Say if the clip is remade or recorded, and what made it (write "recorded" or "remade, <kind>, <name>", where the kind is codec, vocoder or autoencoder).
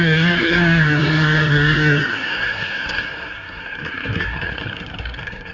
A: remade, codec, SNAC